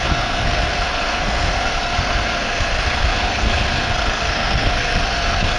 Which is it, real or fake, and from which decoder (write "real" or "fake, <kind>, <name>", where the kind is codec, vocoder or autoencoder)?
fake, codec, SNAC